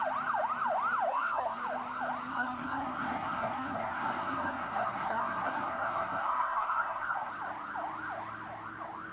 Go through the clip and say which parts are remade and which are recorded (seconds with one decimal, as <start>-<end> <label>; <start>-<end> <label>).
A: 0.0-1.1 recorded; 1.1-1.6 remade; 1.6-2.3 recorded; 2.3-7.3 remade; 7.3-9.1 recorded